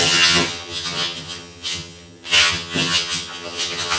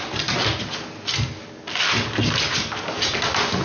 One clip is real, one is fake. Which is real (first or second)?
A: second